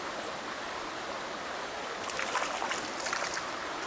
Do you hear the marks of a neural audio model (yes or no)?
no